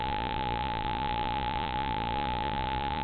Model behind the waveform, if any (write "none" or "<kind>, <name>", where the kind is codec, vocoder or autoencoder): vocoder, Vocos